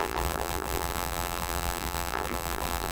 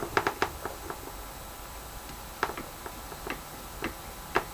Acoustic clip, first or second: second